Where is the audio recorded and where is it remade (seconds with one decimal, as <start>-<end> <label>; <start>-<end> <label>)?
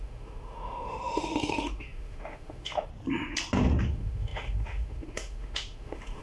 0.0-2.9 remade; 2.9-3.9 recorded; 3.9-6.2 remade